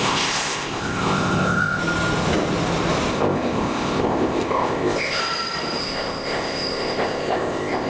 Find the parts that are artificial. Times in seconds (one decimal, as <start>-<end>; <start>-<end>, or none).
0.0-1.8; 3.1-5.2; 5.8-7.9